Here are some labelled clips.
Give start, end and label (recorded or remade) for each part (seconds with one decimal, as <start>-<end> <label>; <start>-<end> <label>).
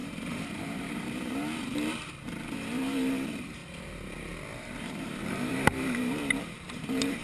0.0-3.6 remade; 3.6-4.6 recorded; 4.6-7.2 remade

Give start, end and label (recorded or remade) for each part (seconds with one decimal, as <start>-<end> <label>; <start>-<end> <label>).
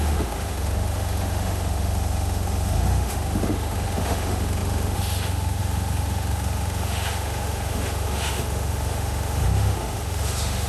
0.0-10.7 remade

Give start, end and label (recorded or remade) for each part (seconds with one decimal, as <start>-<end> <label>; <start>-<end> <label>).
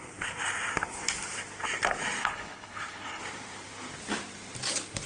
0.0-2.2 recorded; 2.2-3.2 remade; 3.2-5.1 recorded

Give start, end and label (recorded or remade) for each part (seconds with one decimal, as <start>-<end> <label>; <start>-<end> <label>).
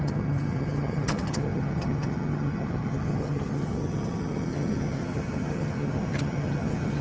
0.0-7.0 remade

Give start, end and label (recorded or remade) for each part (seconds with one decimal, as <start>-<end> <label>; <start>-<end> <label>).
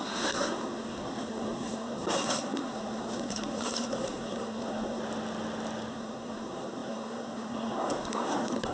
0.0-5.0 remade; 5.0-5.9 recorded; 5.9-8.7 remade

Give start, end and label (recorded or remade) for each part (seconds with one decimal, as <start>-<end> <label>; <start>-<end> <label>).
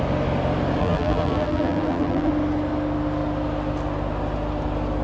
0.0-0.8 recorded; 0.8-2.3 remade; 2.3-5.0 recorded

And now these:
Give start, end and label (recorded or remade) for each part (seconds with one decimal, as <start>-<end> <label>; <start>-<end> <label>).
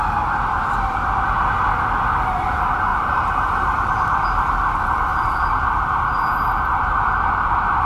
0.0-2.9 recorded; 2.9-3.9 remade; 3.9-5.1 recorded; 5.1-5.6 remade; 5.6-7.9 recorded